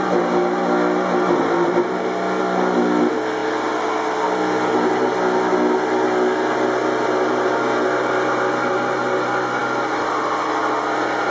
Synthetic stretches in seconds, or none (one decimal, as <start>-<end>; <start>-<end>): none